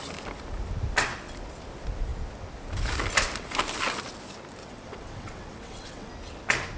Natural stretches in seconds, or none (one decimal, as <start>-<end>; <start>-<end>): 0.0-4.6; 6.1-6.8